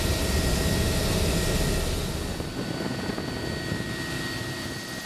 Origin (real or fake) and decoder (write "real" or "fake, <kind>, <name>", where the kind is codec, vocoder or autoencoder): real